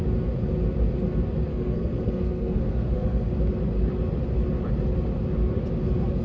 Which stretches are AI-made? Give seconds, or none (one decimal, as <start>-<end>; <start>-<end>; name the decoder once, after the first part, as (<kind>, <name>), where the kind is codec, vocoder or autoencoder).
1.5-3.3 (codec, SNAC)